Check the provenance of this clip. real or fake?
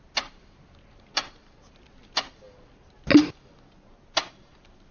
real